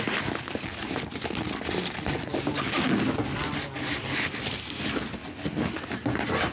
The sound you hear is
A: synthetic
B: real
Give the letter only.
B